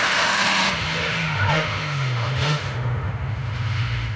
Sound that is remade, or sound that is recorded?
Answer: remade